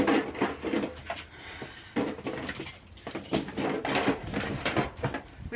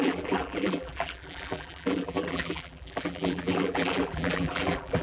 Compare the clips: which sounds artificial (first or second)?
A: second